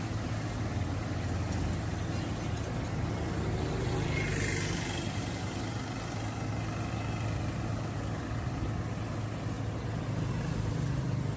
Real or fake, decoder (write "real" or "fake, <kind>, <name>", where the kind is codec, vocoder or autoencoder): real